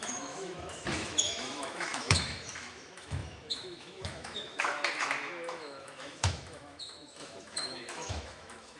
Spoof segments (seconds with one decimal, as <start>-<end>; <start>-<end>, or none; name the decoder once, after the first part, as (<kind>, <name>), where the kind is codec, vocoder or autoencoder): 0.0-8.8 (autoencoder, DAC-VAE)